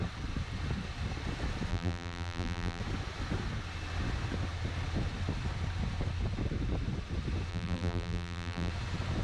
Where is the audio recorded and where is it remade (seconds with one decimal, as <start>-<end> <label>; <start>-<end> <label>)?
0.0-1.7 recorded; 1.7-2.8 remade; 2.8-7.5 recorded; 7.5-8.7 remade; 8.7-9.2 recorded